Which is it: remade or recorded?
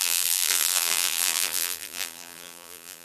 remade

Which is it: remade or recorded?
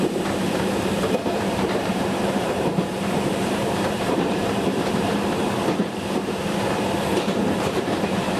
remade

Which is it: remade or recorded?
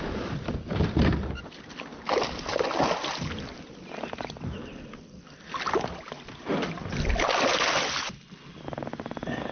recorded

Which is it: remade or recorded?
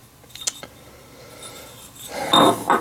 recorded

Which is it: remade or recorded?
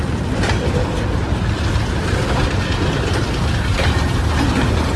recorded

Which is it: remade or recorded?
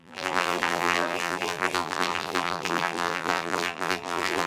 remade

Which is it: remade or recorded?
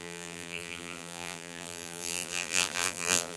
remade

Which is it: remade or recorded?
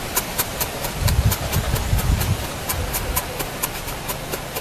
remade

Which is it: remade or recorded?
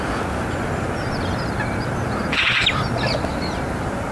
recorded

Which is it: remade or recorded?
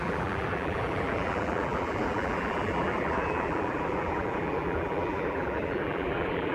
remade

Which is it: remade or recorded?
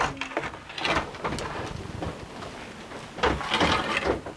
recorded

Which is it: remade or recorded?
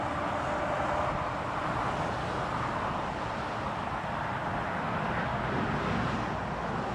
recorded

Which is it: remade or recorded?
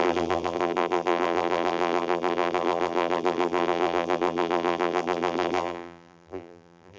remade